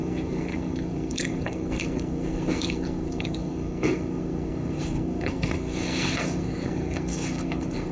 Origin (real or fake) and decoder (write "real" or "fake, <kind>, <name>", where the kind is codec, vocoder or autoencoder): fake, codec, SNAC